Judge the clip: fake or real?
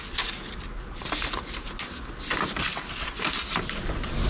real